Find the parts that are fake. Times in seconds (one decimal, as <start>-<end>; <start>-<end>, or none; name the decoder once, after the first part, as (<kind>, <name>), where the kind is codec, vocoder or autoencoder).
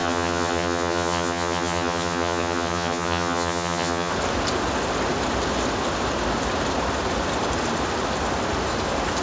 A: 0.0-4.1 (vocoder, HiFi-GAN)